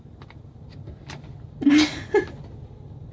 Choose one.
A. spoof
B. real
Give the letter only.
B